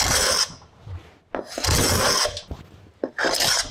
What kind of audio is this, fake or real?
real